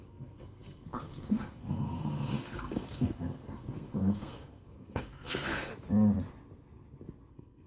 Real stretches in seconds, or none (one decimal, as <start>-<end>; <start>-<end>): 5.7-7.3